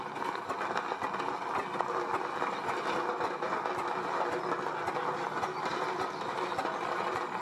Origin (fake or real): real